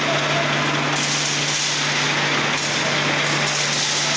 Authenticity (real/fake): real